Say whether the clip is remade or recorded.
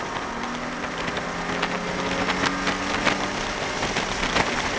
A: recorded